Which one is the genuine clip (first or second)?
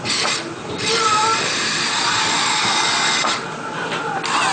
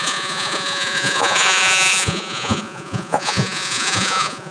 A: first